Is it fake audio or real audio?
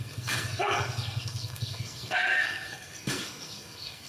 fake